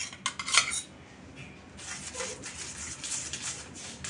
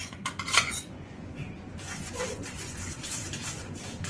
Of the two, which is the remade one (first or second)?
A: second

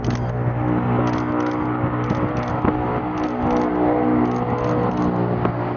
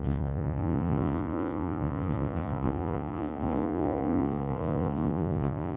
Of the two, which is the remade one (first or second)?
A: second